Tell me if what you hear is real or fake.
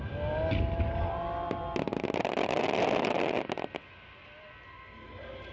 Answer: real